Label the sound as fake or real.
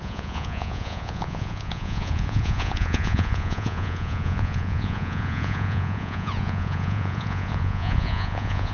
fake